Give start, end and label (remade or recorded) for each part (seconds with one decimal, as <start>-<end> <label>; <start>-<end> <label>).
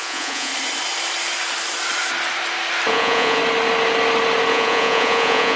0.0-0.5 remade; 0.5-2.9 recorded; 2.9-3.4 remade; 3.4-4.5 recorded; 4.5-5.6 remade